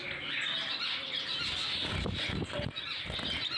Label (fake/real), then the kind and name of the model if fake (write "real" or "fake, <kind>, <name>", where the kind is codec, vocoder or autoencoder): real